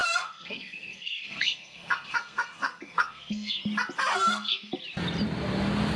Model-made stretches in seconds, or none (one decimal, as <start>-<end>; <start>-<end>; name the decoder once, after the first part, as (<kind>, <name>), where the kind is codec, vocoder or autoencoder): 0.0-3.6 (codec, SNAC); 4.1-4.7